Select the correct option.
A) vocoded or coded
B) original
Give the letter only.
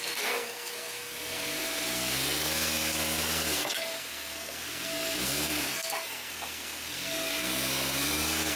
A